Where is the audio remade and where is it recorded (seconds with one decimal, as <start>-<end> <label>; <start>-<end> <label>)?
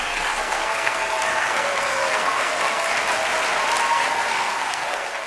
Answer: 0.0-2.9 remade; 2.9-3.9 recorded; 3.9-5.3 remade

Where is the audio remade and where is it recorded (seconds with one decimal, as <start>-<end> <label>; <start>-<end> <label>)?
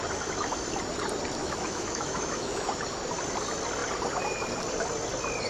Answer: 0.0-1.4 recorded; 1.4-2.7 remade; 2.7-5.5 recorded